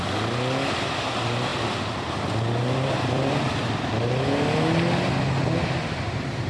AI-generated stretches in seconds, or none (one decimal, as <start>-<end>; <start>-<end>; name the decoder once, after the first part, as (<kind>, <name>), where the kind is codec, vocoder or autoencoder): 1.5-3.4 (vocoder, BigVGAN v2)